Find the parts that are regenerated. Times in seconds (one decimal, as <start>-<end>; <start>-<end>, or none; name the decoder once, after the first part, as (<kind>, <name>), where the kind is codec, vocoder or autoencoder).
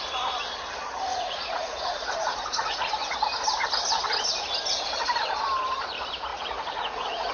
1.1-2.9 (vocoder, Vocos); 6.3-7.3